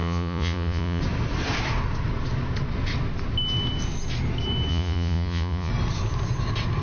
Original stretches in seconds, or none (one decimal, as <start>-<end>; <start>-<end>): 1.0-4.7; 5.7-6.8